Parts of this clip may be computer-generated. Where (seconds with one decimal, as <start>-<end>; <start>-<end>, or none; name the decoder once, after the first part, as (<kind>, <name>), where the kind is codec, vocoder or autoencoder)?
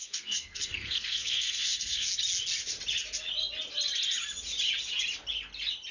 0.0-2.1 (codec, SNAC)